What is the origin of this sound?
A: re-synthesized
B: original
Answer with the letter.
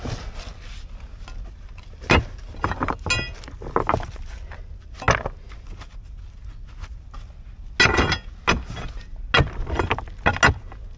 B